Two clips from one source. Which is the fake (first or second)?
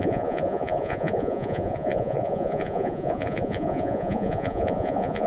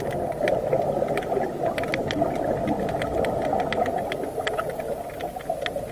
first